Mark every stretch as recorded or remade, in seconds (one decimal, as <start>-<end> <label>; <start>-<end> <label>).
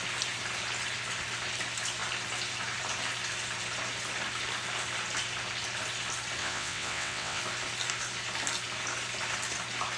0.0-6.4 recorded; 6.4-7.4 remade; 7.4-10.0 recorded